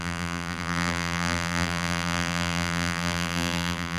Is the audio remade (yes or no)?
yes